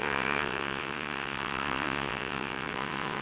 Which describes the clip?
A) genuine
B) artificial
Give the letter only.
B